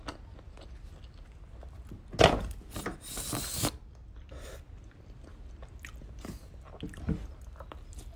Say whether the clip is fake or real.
real